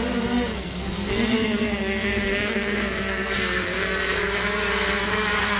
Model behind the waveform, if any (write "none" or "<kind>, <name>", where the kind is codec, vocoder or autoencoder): codec, SNAC